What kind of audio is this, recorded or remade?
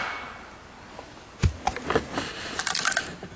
recorded